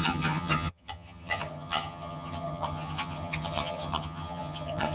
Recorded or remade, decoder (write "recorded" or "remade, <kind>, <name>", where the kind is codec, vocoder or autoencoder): remade, vocoder, HiFi-GAN